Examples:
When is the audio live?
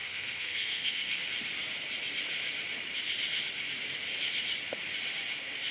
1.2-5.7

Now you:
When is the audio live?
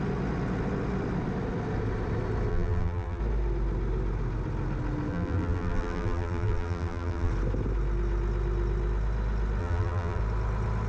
0.0-2.5; 3.2-5.1; 7.3-9.6; 10.2-10.9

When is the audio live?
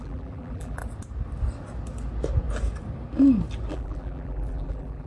0.8-3.7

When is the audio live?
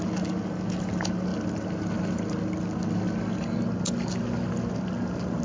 0.0-5.4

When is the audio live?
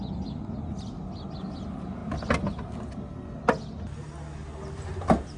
0.0-5.4